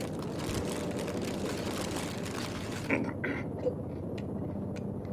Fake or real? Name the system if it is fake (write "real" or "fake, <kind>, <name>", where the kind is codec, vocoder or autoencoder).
real